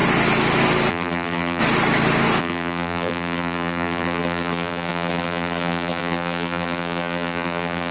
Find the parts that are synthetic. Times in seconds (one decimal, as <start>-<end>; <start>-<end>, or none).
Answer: 0.9-1.6; 2.4-7.9